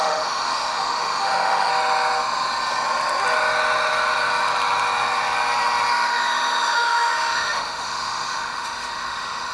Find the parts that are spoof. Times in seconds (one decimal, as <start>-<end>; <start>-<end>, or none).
0.0-1.7; 5.9-9.5